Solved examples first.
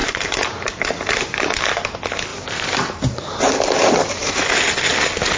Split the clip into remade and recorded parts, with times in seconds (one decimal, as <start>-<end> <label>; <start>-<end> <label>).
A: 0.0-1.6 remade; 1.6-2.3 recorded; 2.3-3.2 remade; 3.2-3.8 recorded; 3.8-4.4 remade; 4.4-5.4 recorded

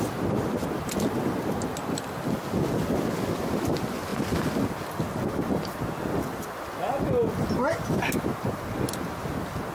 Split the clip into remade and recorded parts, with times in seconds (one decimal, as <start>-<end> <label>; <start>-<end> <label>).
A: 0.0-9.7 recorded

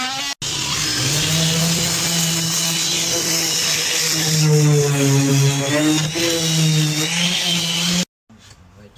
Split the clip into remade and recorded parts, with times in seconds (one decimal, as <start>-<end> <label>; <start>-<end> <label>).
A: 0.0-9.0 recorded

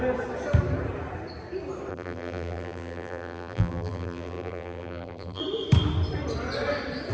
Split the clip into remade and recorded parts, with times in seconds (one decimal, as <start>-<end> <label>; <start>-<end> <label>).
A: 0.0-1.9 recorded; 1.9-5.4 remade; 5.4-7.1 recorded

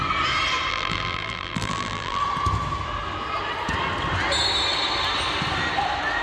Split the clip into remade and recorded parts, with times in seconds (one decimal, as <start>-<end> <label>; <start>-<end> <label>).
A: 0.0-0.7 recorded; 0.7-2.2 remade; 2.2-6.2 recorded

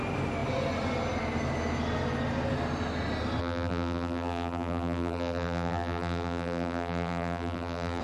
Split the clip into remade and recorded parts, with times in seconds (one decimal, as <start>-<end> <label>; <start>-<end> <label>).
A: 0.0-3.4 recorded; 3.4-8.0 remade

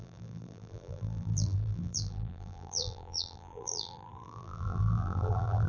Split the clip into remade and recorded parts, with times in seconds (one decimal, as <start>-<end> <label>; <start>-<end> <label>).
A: 0.0-5.7 remade

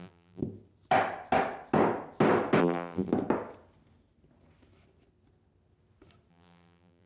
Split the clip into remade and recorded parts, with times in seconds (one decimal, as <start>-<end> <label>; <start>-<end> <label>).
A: 0.0-0.4 remade; 0.4-2.6 recorded; 2.6-3.1 remade; 3.1-6.3 recorded; 6.3-7.1 remade